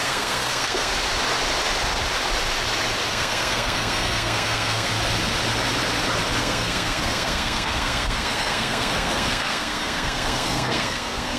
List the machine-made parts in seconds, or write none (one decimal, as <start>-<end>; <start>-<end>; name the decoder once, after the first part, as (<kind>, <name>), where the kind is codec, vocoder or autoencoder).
0.0-0.9 (codec, SNAC); 3.1-4.9; 6.4-11.4